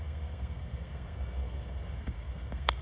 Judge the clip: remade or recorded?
remade